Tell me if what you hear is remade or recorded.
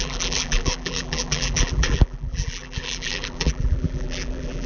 remade